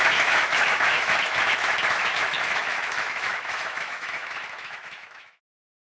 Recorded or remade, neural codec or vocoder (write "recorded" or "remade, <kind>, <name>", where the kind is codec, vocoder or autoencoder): remade, autoencoder, DAC-VAE